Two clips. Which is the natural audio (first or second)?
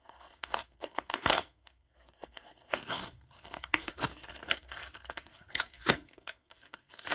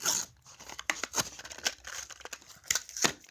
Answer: second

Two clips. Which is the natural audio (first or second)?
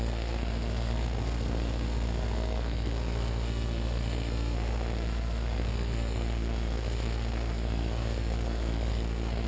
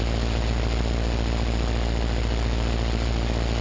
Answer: second